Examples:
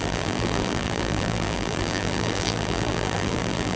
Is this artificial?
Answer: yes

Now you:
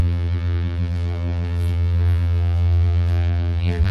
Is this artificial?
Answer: yes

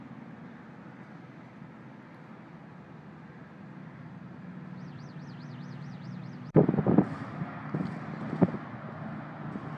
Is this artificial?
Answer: no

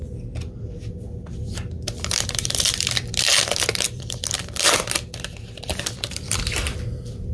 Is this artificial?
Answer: yes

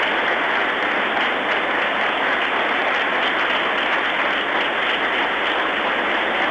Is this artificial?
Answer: no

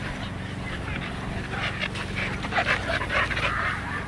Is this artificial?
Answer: no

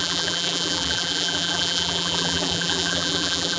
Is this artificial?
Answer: yes